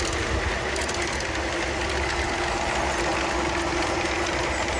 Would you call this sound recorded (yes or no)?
yes